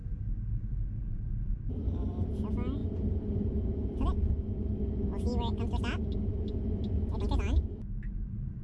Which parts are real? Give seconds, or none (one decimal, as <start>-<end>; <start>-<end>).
0.0-8.6